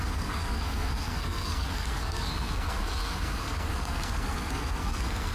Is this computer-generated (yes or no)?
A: yes